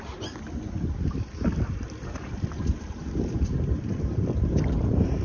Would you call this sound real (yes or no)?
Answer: no